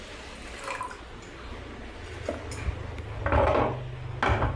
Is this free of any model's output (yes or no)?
yes